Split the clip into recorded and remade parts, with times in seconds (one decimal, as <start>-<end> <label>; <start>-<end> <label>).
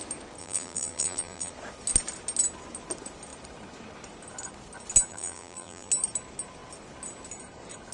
0.0-0.4 recorded; 0.4-1.5 remade; 1.5-5.1 recorded; 5.1-5.9 remade; 5.9-7.9 recorded